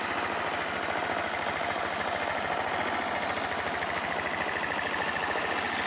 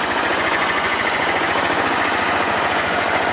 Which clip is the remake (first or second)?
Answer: second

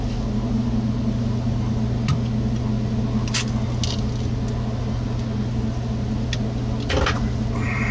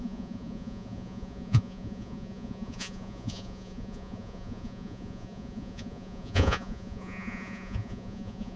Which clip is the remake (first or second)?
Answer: second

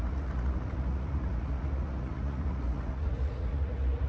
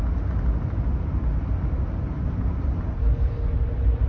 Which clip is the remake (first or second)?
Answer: first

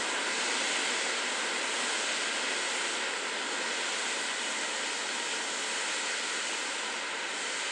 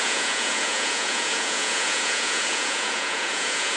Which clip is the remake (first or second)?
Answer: second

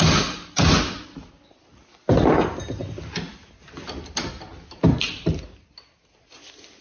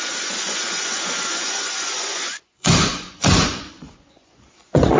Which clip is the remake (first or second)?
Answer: second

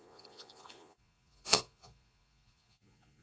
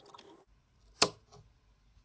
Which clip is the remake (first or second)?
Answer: first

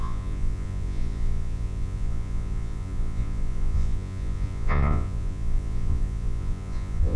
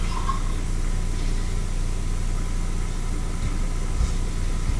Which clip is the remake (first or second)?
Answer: first